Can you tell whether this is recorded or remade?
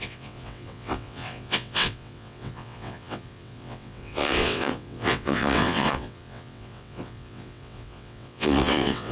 remade